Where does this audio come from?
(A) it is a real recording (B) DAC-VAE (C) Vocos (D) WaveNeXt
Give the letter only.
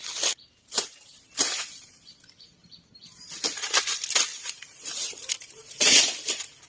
A